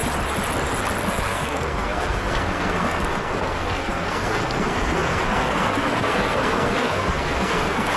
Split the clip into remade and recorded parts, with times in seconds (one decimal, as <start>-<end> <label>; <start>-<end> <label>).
0.0-1.1 recorded; 1.1-8.0 remade